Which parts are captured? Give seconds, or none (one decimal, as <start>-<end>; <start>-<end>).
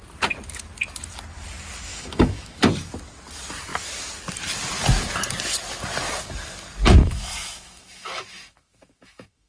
0.0-1.9; 2.6-7.0